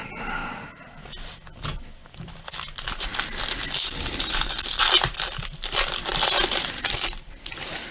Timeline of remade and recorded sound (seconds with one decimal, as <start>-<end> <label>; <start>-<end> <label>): 0.0-6.1 recorded; 6.1-7.9 remade